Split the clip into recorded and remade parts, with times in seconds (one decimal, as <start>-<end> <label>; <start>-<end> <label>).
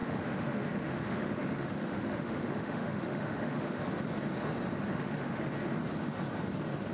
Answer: 0.0-3.8 remade; 3.8-4.9 recorded; 4.9-5.4 remade; 5.4-6.9 recorded